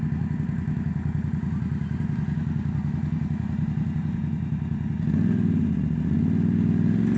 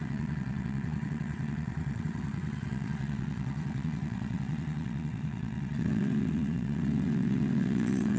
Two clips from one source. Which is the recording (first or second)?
first